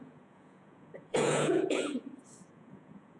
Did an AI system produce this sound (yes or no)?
yes